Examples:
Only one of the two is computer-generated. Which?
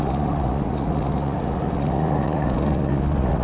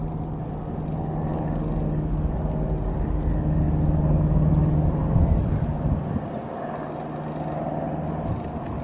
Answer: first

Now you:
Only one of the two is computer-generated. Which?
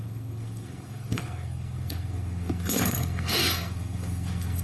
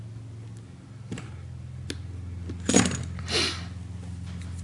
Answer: first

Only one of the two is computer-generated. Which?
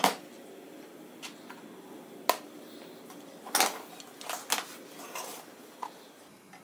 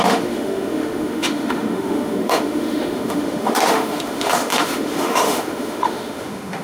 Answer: second